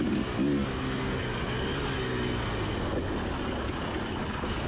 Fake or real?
real